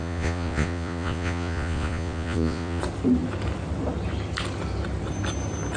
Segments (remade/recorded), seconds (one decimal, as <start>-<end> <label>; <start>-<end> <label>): 0.0-2.8 remade; 2.8-5.8 recorded